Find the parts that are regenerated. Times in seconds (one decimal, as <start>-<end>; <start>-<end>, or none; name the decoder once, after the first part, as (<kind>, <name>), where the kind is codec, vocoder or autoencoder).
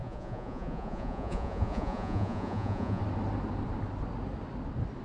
0.0-3.0 (vocoder, Vocos)